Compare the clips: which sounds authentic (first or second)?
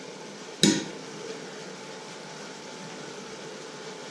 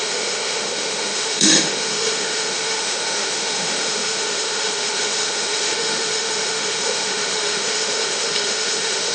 first